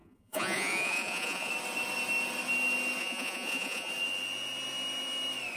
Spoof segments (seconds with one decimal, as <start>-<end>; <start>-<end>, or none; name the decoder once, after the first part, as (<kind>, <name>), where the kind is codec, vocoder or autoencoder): 0.0-1.5 (vocoder, Vocos); 3.0-3.9